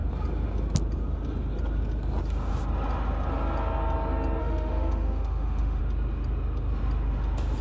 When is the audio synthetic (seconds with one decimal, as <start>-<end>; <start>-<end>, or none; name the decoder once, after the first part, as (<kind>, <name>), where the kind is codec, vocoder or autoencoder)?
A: 4.4-5.8 (autoencoder, DAC-VAE)